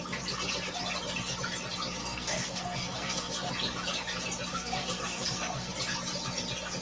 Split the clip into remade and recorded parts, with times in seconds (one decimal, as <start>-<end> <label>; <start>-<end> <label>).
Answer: 0.0-2.0 recorded; 2.0-3.5 remade; 3.5-4.5 recorded; 4.5-5.7 remade; 5.7-6.8 recorded